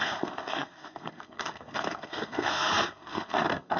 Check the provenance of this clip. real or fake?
fake